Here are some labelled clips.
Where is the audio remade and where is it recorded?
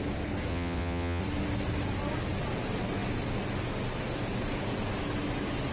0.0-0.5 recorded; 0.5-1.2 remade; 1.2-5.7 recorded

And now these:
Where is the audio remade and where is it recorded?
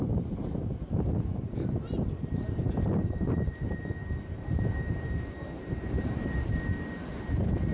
0.0-3.8 remade; 3.8-4.4 recorded; 4.4-7.7 remade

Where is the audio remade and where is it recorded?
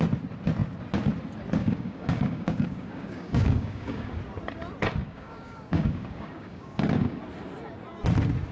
0.0-1.6 recorded; 1.6-4.2 remade; 4.2-5.0 recorded; 5.0-7.2 remade; 7.2-8.5 recorded